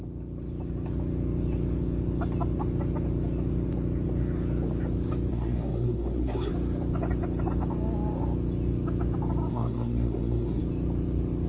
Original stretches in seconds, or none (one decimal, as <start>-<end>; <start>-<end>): 0.0-5.3; 6.5-9.5; 10.6-11.5